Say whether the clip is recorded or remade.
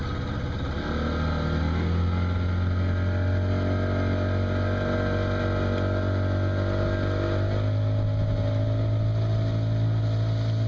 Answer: recorded